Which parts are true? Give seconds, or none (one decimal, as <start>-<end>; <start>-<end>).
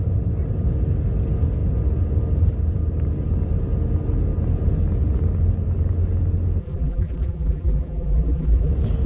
0.0-6.6; 8.7-9.1